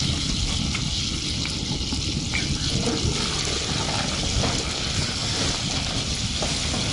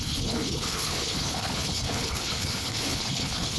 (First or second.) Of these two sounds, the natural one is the first